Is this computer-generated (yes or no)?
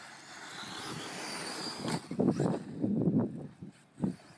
no